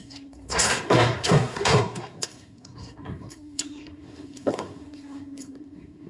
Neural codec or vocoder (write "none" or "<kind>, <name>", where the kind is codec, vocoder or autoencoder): codec, SNAC